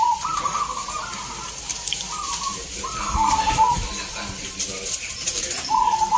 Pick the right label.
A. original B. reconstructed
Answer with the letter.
A